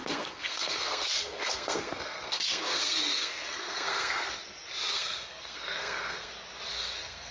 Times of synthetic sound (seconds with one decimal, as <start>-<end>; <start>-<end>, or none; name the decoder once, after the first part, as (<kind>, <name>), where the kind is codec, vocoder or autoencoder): 0.0-4.4 (codec, SNAC); 4.9-6.3; 6.7-7.3